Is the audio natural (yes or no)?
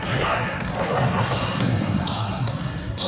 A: no